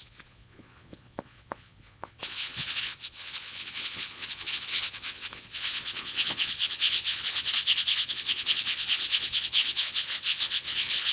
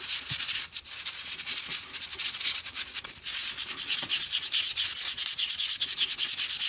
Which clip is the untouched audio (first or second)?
second